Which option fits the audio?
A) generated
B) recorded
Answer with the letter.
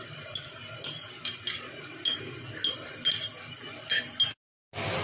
B